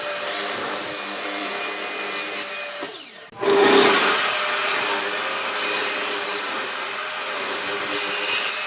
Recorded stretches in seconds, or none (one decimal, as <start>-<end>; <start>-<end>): 0.0-7.1; 7.9-8.7